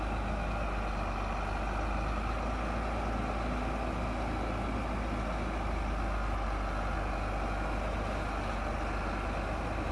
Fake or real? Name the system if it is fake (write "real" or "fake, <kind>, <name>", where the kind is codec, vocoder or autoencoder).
real